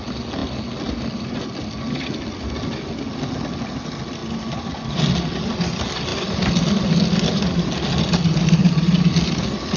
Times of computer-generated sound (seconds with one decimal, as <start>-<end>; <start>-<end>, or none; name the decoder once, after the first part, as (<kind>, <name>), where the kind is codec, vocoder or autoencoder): none